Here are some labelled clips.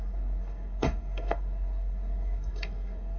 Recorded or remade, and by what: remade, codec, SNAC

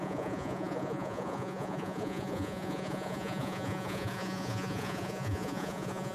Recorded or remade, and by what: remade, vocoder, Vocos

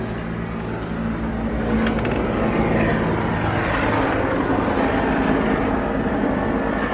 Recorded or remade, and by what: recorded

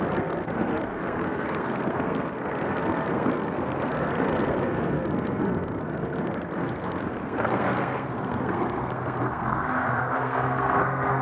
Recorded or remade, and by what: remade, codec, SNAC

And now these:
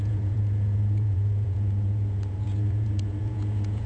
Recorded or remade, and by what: remade, vocoder, Vocos